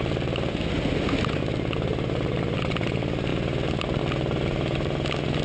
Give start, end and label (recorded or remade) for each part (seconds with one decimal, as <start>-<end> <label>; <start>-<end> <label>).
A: 0.0-5.4 recorded